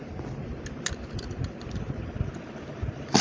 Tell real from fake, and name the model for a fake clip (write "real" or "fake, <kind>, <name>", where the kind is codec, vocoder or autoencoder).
real